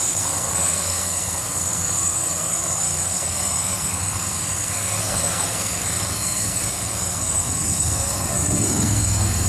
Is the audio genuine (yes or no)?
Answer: no